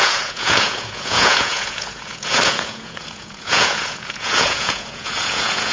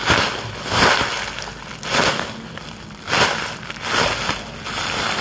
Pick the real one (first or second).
second